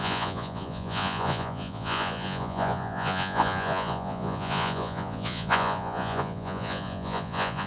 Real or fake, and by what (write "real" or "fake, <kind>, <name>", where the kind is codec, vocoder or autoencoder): fake, vocoder, Vocos